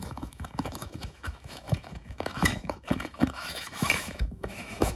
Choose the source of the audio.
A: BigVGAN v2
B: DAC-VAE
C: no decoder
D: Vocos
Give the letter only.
B